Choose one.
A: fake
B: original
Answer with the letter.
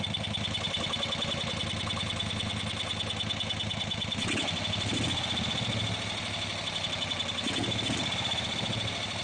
B